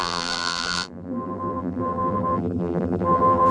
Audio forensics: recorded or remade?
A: remade